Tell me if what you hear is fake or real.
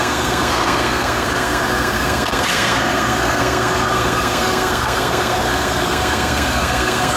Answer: fake